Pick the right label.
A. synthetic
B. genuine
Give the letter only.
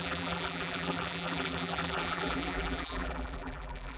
A